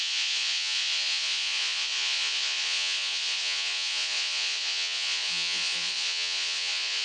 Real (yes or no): no